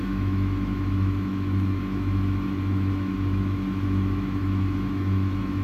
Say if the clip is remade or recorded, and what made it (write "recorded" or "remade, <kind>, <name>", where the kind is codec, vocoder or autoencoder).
remade, autoencoder, DAC-VAE